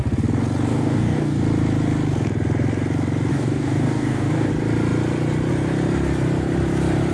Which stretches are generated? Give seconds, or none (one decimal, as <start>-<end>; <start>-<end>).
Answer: 0.7-1.4; 3.3-4.5